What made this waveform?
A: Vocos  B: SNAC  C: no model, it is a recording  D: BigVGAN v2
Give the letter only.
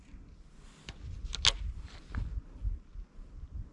C